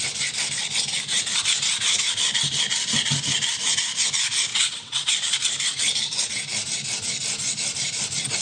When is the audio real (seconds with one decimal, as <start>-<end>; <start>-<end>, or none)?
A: 0.0-4.5; 5.1-8.4